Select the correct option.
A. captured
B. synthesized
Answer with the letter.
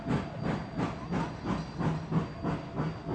A